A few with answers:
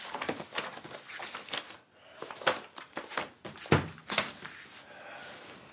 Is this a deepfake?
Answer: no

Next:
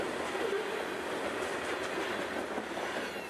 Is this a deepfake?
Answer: no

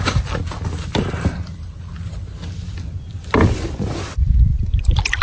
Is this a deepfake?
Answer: no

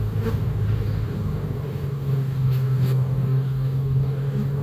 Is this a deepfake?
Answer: yes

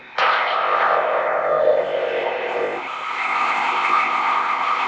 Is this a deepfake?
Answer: yes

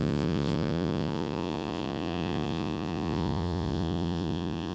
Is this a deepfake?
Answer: yes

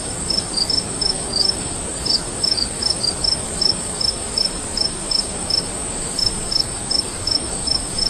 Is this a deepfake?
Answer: yes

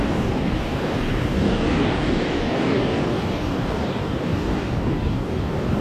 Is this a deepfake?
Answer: yes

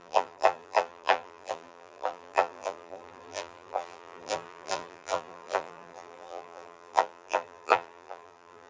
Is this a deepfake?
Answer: yes